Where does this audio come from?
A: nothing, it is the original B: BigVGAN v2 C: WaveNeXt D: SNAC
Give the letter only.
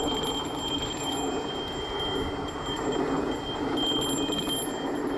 A